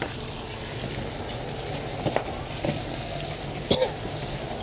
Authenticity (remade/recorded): recorded